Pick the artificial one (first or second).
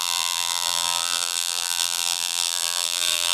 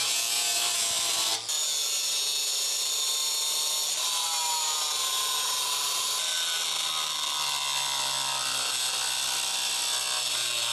first